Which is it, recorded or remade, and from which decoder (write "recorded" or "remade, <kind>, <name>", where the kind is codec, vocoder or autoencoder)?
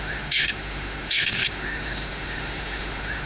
remade, autoencoder, DAC-VAE